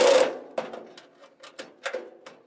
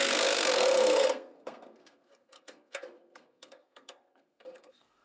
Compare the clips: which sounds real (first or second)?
first